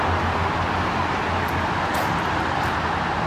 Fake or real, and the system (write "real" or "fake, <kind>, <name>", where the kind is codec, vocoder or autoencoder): real